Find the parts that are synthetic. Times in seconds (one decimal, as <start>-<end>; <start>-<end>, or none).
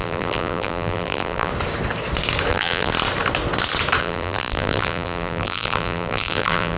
0.0-1.5; 2.5-2.9; 4.0-6.8